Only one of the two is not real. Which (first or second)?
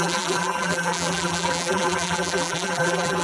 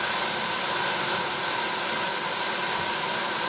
first